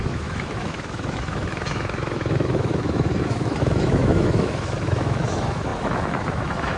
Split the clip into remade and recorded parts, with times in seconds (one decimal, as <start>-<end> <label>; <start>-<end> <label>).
0.0-6.8 remade